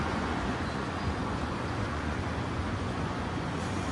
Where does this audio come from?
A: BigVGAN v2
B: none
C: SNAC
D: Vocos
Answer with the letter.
D